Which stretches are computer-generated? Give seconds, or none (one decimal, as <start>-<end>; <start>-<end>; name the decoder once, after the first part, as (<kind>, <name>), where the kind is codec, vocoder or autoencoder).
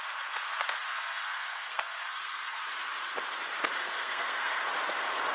0.8-2.6 (codec, SNAC); 3.8-4.6